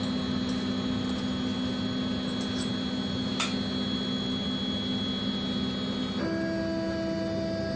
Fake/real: real